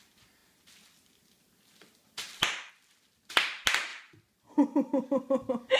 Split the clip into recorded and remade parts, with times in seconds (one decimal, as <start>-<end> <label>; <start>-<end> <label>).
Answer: 0.0-5.8 recorded